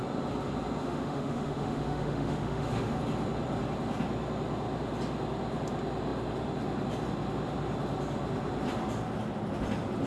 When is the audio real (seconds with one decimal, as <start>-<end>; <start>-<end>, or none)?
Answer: 0.0-0.8; 3.0-10.1